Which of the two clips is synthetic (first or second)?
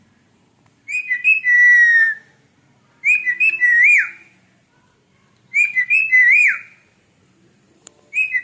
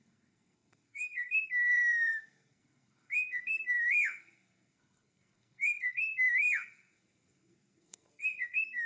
second